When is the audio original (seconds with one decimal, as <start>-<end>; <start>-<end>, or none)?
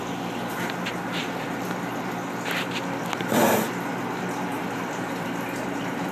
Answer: 0.0-4.5